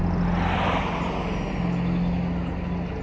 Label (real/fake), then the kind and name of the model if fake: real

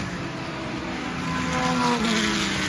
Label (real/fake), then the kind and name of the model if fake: real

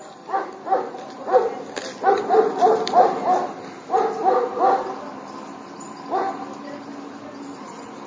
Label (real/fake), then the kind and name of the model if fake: real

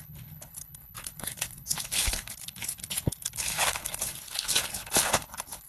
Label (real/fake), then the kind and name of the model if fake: fake, codec, HILCodec